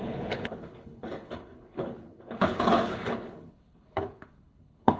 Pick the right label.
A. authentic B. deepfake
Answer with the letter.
B